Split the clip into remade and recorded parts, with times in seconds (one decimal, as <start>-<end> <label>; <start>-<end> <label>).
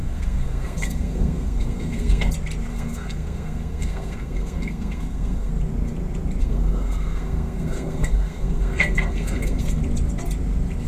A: 0.0-2.3 remade; 2.3-2.7 recorded; 2.7-5.5 remade; 5.5-6.4 recorded; 6.4-9.8 remade; 9.8-10.9 recorded